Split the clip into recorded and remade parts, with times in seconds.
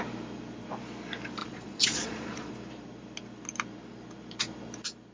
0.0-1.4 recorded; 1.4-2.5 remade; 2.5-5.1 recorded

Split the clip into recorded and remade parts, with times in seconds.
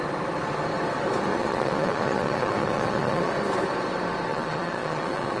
0.0-1.3 recorded; 1.3-3.3 remade; 3.3-4.3 recorded; 4.3-5.4 remade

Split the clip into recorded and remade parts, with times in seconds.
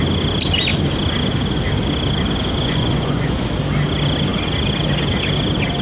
0.0-2.6 recorded; 2.6-3.5 remade; 3.5-5.8 recorded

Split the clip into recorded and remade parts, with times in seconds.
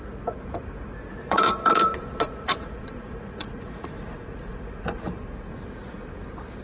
0.0-1.2 recorded; 1.2-5.2 remade; 5.2-6.6 recorded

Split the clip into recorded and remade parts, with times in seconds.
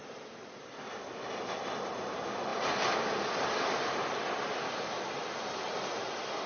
0.0-6.5 recorded